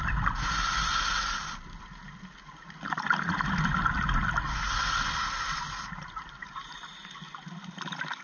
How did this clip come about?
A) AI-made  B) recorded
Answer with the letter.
B